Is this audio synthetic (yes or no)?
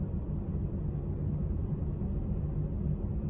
no